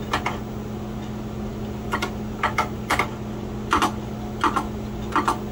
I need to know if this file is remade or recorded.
recorded